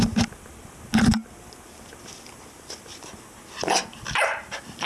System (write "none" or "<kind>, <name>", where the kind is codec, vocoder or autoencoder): none